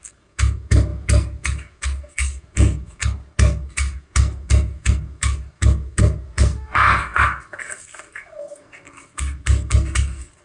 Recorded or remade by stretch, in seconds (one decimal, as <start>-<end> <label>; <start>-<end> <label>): 0.0-10.4 remade